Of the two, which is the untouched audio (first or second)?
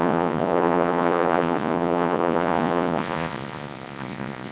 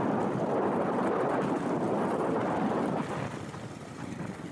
second